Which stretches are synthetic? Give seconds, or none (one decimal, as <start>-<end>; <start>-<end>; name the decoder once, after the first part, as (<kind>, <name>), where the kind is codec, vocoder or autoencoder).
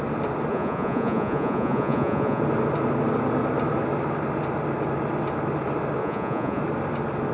0.5-2.4 (vocoder, Vocos); 6.0-6.6